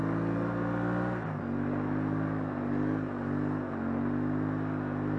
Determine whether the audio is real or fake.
real